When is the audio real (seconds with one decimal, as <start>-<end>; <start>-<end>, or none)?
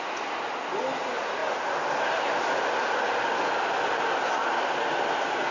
0.0-5.5